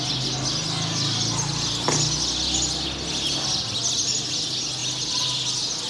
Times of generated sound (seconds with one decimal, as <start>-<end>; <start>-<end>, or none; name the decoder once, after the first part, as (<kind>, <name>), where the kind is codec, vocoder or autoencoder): none